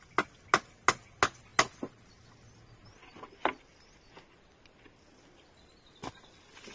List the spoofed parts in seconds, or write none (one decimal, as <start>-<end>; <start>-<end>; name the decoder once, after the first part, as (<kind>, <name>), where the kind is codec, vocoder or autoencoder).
none